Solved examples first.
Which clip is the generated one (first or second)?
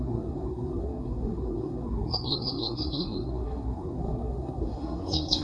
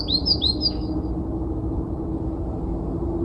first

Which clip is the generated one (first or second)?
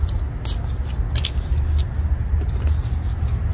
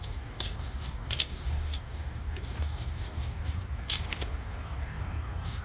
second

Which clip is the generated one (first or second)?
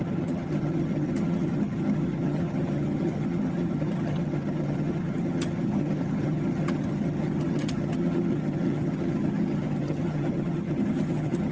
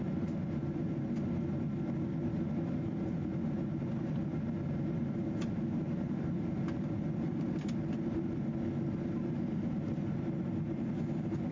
first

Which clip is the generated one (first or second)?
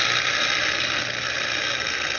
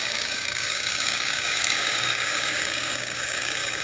second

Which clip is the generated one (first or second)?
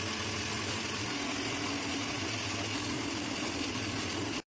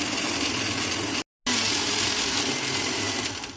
first